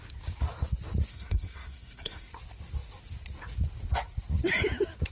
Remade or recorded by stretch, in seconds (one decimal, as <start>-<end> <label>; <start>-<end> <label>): 0.0-1.1 recorded; 1.1-2.3 remade; 2.3-5.1 recorded